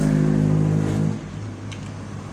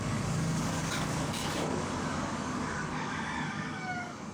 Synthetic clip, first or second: second